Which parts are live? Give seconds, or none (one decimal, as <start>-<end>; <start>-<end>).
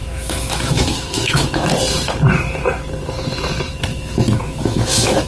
1.7-3.9